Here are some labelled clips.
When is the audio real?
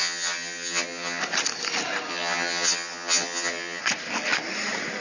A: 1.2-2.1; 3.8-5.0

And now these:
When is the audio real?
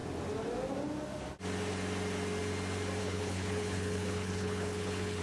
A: 0.0-3.0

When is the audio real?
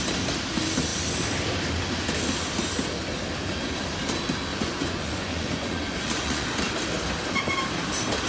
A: 0.0-4.5; 6.6-8.3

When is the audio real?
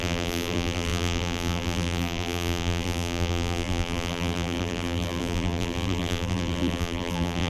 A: none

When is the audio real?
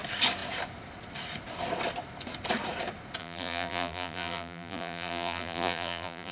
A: 0.0-3.2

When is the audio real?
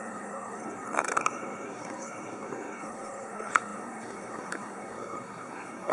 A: none